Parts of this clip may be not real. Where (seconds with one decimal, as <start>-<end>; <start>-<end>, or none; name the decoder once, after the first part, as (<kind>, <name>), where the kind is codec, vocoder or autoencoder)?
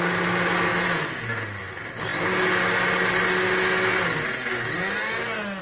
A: none